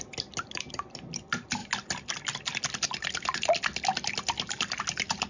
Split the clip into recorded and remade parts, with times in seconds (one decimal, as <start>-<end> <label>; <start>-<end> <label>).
0.0-5.3 recorded